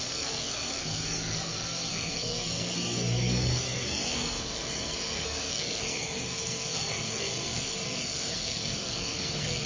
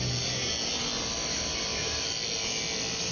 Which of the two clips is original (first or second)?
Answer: second